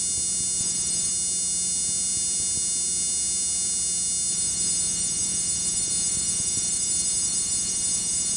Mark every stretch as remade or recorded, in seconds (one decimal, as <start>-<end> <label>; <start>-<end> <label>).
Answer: 0.0-0.6 recorded; 0.6-1.1 remade; 1.1-4.3 recorded; 4.3-8.4 remade